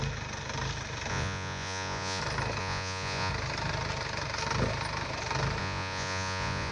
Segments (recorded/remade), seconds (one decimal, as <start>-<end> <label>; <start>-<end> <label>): 0.0-1.1 recorded; 1.1-2.2 remade; 2.2-2.6 recorded; 2.6-3.3 remade; 3.3-5.6 recorded; 5.6-6.7 remade